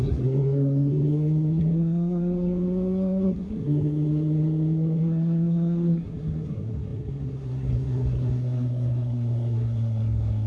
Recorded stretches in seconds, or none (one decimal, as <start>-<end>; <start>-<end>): none